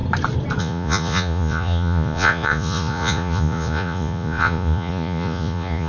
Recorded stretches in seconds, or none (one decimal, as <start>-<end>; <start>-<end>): 0.0-0.6